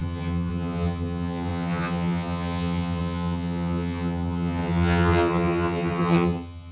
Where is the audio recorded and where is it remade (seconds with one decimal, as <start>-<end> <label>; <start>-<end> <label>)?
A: 0.0-6.7 remade